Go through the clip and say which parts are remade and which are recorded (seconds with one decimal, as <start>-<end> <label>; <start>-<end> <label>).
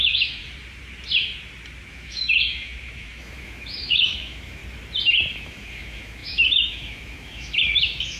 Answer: 0.0-0.4 remade; 0.4-1.9 recorded; 1.9-4.6 remade; 4.6-5.3 recorded; 5.3-8.2 remade